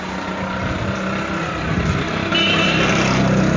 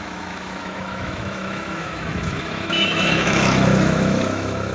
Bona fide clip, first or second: first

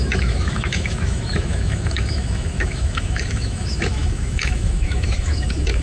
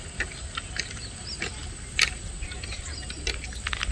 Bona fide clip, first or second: second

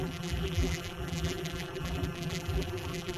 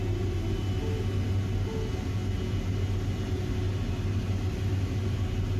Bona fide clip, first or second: second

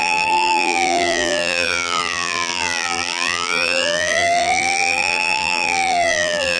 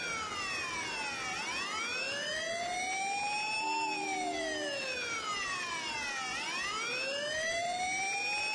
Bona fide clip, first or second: second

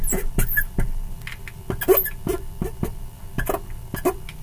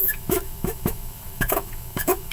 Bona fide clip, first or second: first